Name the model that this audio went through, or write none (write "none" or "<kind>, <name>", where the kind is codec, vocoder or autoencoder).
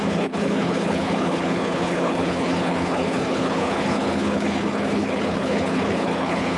codec, HILCodec